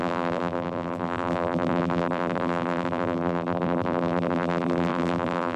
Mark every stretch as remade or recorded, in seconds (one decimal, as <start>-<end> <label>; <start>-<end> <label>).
0.0-5.6 remade